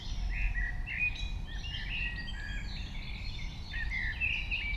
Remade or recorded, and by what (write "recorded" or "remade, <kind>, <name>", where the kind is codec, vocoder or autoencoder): recorded